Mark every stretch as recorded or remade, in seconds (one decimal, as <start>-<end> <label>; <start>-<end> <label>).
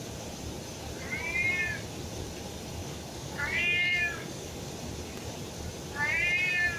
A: 0.0-2.8 recorded; 2.8-4.7 remade; 4.7-6.8 recorded